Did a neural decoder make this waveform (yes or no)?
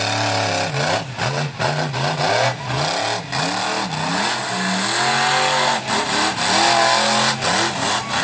no